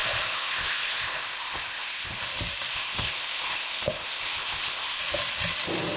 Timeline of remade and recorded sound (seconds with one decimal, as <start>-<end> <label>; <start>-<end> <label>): 0.0-2.2 remade; 2.2-2.7 recorded; 2.7-5.0 remade; 5.0-6.0 recorded